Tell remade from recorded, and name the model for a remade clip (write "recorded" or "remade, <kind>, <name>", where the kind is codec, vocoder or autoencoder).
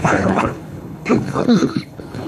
remade, codec, HILCodec